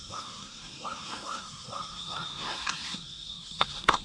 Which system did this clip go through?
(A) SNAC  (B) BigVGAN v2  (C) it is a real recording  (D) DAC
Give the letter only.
A